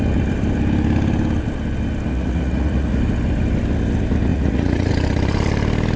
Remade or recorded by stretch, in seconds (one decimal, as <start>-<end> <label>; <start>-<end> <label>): 0.0-2.1 recorded; 2.1-3.0 remade; 3.0-4.3 recorded; 4.3-4.9 remade; 4.9-6.0 recorded